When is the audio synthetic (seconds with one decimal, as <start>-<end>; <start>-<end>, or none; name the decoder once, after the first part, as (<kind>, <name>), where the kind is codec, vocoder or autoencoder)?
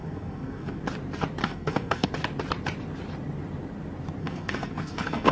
0.0-0.8 (codec, SNAC); 1.4-2.1; 4.2-5.3